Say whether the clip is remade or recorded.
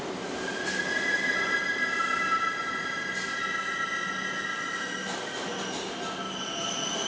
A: recorded